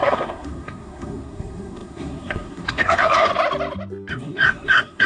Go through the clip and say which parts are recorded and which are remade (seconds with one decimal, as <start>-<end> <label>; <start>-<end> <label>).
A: 0.0-3.3 remade; 3.3-4.1 recorded; 4.1-5.1 remade